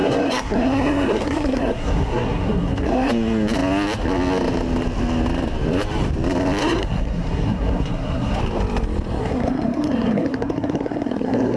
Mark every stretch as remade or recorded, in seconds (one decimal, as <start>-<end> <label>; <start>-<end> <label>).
0.0-3.1 remade; 3.1-6.6 recorded; 6.6-8.4 remade; 8.4-9.2 recorded; 9.2-11.6 remade